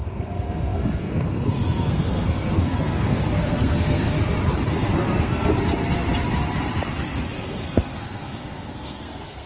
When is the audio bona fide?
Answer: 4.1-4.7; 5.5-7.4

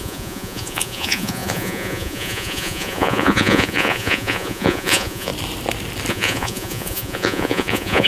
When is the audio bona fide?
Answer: 5.3-6.1